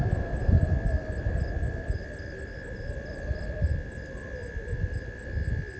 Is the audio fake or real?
real